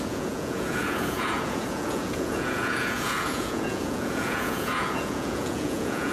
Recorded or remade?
remade